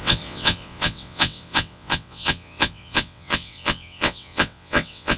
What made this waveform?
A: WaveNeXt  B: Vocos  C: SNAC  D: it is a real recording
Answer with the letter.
A